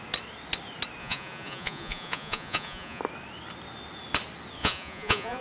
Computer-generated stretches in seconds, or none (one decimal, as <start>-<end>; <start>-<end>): 1.0-3.0; 4.6-5.4